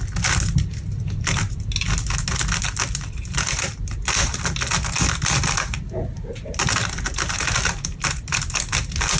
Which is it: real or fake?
real